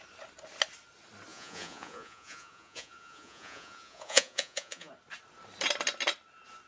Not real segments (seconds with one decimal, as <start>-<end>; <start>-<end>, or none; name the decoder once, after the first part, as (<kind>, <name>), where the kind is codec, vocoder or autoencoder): 1.3-4.9 (vocoder, Vocos)